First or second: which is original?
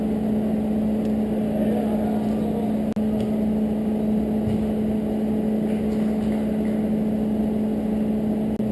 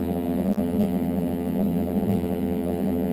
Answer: first